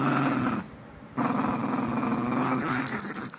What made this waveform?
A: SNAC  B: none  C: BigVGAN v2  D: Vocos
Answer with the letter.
B